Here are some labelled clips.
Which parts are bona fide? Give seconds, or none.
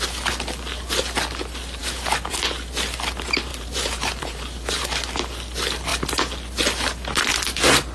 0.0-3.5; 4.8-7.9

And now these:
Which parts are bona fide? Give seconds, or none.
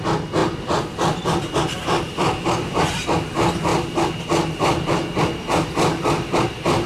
0.0-0.4; 3.1-6.9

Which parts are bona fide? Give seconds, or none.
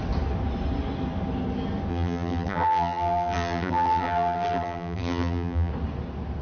0.0-1.9; 5.7-6.4